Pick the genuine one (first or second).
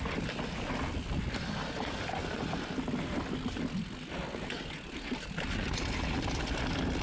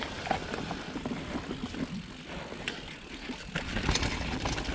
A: first